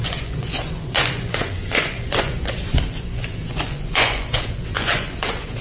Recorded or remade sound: remade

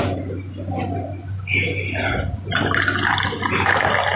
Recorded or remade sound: recorded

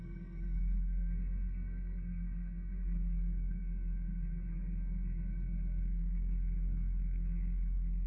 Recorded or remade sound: remade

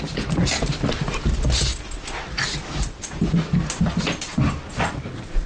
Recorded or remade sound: recorded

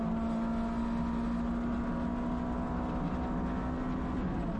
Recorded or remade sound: recorded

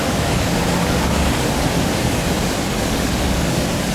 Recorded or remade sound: remade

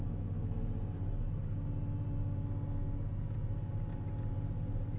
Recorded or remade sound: recorded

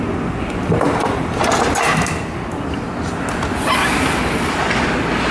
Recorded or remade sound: recorded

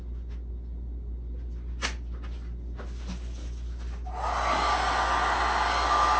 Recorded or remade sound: recorded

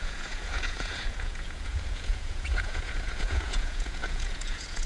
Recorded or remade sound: remade